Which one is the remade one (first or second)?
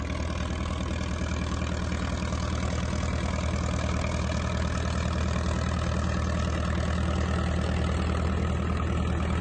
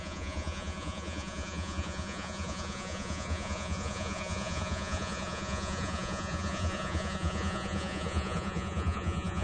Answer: second